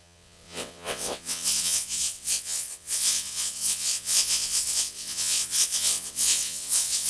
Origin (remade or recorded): remade